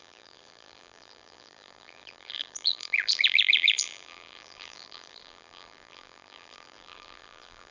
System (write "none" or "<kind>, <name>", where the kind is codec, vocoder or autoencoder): vocoder, BigVGAN v2